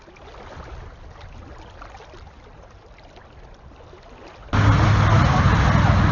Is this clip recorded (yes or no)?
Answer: yes